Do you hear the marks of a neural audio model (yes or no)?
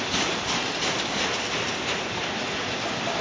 no